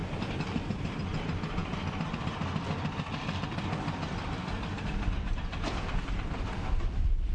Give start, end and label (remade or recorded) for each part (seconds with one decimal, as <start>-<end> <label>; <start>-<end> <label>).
0.0-7.3 remade